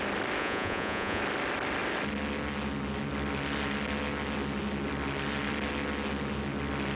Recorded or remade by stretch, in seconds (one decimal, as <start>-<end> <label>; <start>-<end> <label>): 0.0-0.4 recorded; 0.4-1.2 remade; 1.2-7.0 recorded